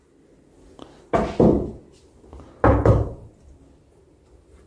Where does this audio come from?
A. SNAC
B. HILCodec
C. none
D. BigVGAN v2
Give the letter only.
C